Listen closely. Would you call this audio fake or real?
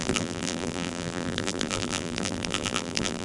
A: fake